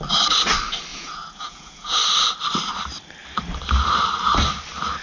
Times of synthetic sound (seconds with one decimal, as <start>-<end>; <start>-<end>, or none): 0.9-2.0